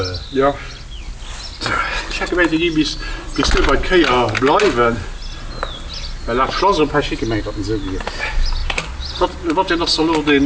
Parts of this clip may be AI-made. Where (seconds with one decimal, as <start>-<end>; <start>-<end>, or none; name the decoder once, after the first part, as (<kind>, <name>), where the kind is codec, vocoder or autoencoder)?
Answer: none